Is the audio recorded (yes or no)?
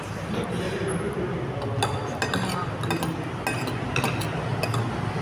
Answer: yes